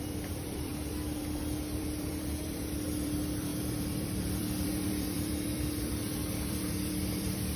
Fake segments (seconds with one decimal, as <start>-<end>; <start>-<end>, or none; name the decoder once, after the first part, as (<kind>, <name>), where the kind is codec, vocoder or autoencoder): 0.0-0.7 (vocoder, BigVGAN v2); 1.4-7.6